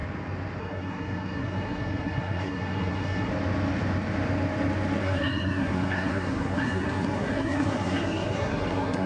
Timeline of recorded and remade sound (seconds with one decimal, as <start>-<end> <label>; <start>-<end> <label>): 0.0-0.6 recorded; 0.6-3.3 remade; 3.3-5.0 recorded; 5.0-9.1 remade